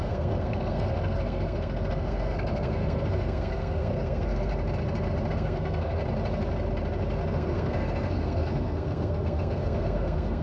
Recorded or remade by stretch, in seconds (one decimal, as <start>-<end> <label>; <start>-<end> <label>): 0.0-4.5 remade; 4.5-5.3 recorded; 5.3-6.0 remade; 6.0-7.3 recorded; 7.3-10.4 remade